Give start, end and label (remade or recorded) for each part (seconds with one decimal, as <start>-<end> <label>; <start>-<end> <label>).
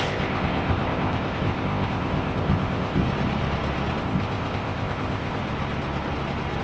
0.0-3.0 remade; 3.0-4.0 recorded; 4.0-5.4 remade; 5.4-6.6 recorded